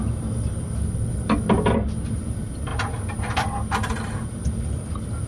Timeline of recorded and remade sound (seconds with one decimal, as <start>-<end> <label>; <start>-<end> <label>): 0.0-5.3 recorded